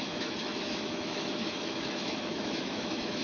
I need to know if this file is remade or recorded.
remade